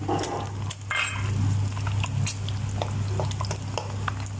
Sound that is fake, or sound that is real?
real